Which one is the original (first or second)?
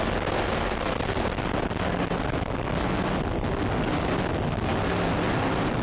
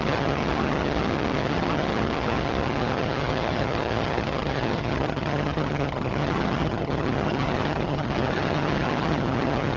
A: first